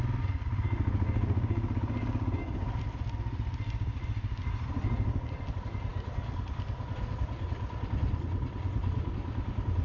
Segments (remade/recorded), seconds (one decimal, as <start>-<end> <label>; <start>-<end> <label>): 0.0-9.8 recorded